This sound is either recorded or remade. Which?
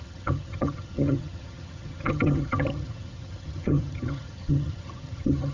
remade